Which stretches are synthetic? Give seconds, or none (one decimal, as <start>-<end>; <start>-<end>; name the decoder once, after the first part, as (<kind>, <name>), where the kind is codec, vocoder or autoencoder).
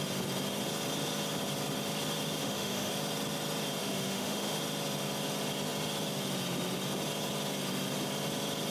2.4-2.9 (autoencoder, DAC-VAE); 3.8-4.6